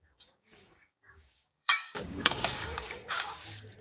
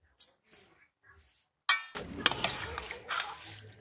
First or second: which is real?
second